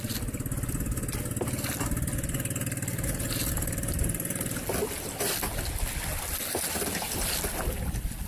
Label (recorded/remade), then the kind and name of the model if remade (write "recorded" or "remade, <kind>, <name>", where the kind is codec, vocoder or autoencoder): recorded